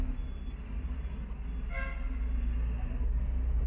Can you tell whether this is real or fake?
real